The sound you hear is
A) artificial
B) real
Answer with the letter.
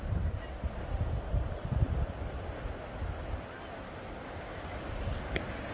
B